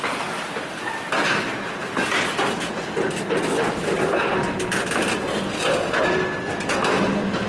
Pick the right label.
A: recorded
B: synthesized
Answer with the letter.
A